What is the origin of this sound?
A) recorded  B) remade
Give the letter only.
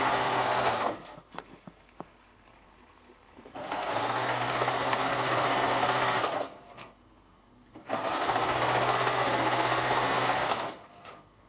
B